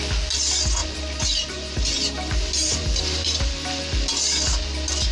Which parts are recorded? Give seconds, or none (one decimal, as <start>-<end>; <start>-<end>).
0.0-0.8; 3.5-5.1